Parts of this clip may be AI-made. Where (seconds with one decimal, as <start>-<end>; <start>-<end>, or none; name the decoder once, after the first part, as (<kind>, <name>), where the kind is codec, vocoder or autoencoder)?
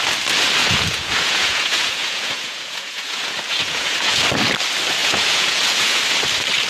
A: 0.6-4.2 (vocoder, Vocos); 5.0-6.0